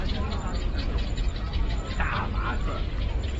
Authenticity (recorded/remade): recorded